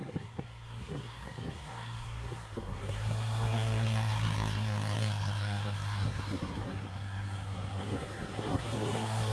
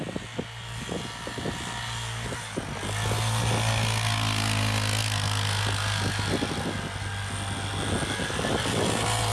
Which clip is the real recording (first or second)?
second